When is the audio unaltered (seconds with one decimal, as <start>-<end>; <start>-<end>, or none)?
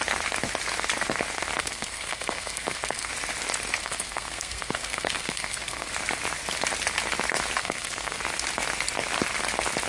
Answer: 0.0-1.6; 3.1-3.8; 5.9-7.6; 8.2-9.9